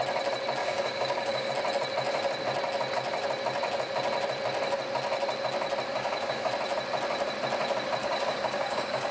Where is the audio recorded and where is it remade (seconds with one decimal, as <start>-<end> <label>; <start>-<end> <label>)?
0.0-0.6 recorded; 0.6-1.5 remade; 1.5-5.9 recorded; 5.9-6.5 remade; 6.5-8.0 recorded; 8.0-9.1 remade